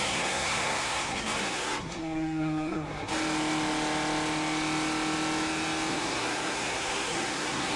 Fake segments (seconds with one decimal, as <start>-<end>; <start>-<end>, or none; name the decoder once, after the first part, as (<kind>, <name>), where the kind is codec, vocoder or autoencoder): 0.0-3.1 (codec, SNAC); 5.9-7.8